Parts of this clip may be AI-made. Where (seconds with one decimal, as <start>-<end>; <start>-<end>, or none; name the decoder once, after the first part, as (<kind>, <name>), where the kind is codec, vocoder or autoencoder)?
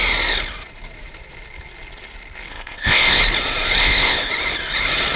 2.5-3.2 (codec, ZipCodec); 3.8-4.3